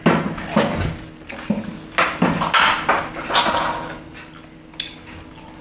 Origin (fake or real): real